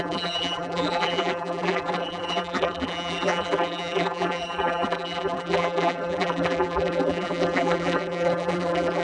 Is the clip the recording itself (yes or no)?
no